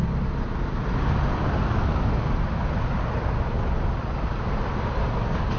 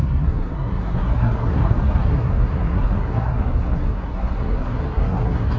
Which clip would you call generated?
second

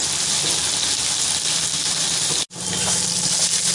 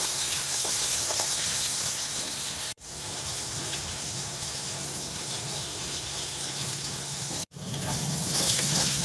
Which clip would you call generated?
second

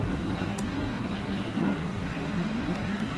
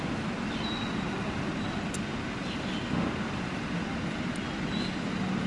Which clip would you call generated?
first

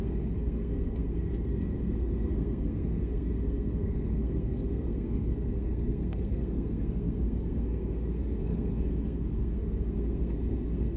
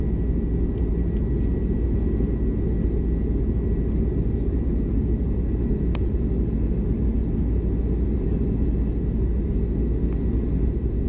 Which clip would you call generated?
first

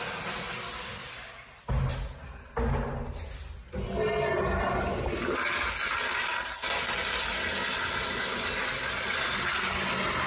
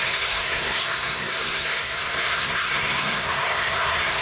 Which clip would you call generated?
second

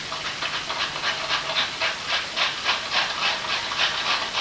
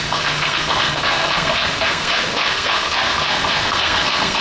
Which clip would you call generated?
second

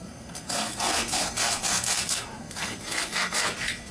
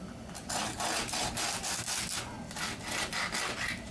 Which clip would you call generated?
first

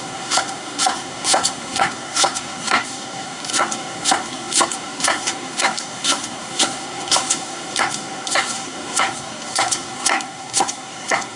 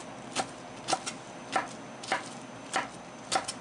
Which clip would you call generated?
first